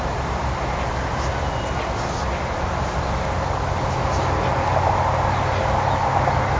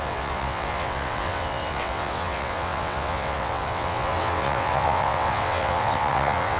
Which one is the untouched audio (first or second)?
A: first